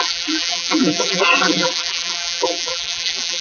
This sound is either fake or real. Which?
fake